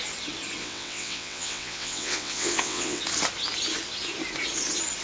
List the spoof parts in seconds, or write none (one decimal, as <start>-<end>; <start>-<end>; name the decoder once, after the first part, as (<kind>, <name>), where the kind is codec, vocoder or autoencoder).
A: 0.6-3.0 (vocoder, WaveNeXt)